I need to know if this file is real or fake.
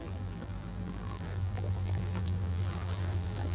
fake